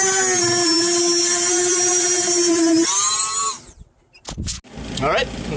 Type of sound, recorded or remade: recorded